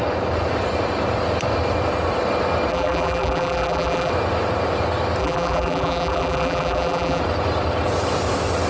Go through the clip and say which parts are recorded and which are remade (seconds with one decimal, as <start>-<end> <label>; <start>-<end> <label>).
0.0-2.7 recorded; 2.7-4.1 remade; 4.1-5.2 recorded; 5.2-7.2 remade; 7.2-8.7 recorded